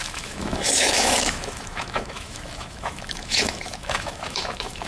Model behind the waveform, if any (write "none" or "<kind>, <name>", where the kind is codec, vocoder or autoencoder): autoencoder, DAC-VAE